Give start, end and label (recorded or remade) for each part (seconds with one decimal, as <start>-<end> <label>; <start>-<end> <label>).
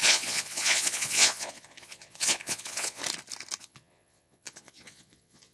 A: 0.0-3.0 remade; 3.0-3.6 recorded; 3.6-5.5 remade